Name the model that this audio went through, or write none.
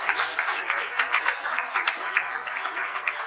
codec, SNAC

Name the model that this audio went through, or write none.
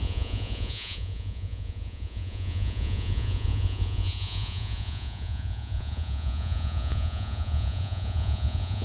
vocoder, Vocos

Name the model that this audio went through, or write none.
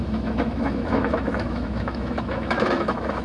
autoencoder, DAC-VAE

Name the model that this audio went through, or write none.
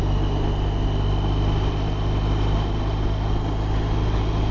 none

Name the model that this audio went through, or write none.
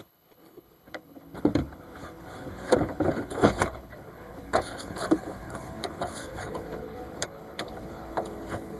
codec, HILCodec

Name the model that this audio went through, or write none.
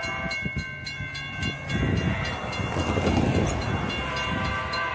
none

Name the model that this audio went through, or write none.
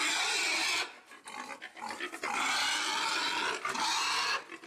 none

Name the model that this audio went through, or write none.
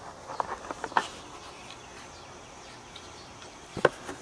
none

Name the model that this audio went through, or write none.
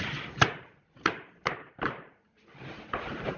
vocoder, BigVGAN v2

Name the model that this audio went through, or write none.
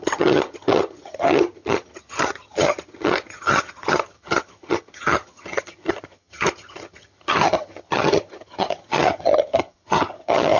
vocoder, HiFi-GAN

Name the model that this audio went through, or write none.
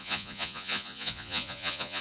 vocoder, Vocos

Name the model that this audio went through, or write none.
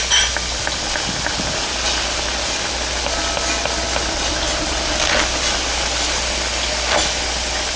none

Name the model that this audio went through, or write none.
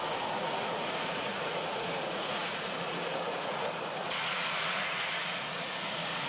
vocoder, Vocos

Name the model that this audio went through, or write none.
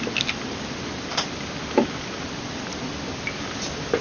none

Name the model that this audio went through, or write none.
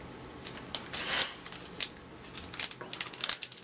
none